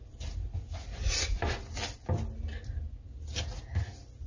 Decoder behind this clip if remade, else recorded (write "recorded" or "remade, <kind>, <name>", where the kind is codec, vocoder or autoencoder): recorded